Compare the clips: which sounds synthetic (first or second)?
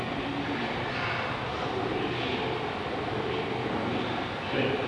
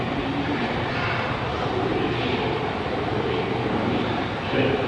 second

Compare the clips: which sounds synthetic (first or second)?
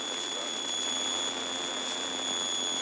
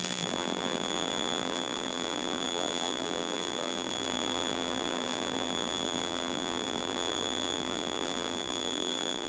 second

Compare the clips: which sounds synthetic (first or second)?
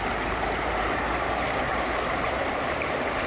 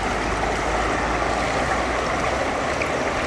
first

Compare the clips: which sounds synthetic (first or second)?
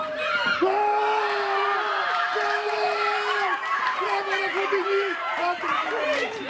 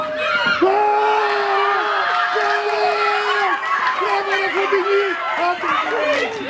first